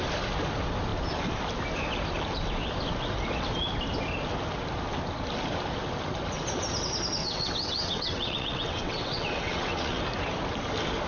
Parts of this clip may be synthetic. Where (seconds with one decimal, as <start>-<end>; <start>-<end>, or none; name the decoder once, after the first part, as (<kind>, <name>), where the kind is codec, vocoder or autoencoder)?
7.2-10.0 (vocoder, WaveNeXt)

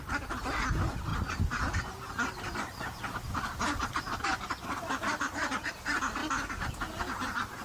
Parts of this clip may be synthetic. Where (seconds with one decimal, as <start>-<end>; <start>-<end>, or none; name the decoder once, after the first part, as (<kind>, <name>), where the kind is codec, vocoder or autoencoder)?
1.1-5.7 (vocoder, BigVGAN v2)

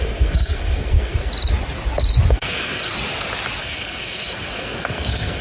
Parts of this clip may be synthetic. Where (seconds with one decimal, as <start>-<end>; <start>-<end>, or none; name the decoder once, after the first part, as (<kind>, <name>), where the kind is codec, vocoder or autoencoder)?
0.0-1.3 (codec, SNAC); 2.3-2.9; 3.6-5.4

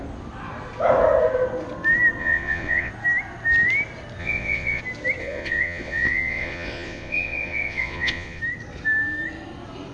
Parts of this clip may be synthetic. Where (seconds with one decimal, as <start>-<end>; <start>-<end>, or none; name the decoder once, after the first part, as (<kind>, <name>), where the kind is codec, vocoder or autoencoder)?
2.2-2.9 (vocoder, Vocos); 4.2-4.8; 5.2-8.4

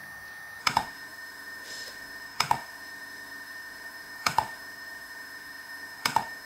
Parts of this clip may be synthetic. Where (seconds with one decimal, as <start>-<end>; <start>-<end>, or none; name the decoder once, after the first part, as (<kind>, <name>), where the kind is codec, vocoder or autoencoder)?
0.6-6.4 (autoencoder, DAC-VAE)

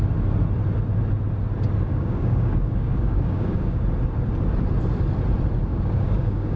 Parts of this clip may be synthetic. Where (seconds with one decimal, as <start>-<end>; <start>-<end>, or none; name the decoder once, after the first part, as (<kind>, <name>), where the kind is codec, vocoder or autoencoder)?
1.9-3.8 (codec, DAC); 5.7-6.6

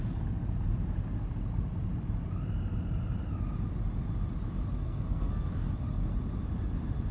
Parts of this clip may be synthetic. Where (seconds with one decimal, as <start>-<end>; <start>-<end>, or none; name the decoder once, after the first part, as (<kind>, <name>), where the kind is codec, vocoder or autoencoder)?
4.8-5.5 (codec, SNAC)

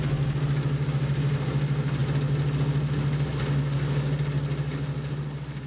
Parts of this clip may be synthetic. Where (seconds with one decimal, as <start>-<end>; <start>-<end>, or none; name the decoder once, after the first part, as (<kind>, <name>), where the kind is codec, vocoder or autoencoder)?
none